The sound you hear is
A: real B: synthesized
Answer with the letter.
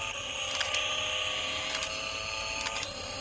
A